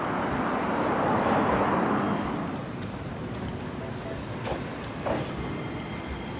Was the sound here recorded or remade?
recorded